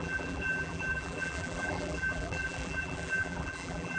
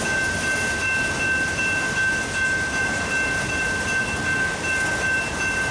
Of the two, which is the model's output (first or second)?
first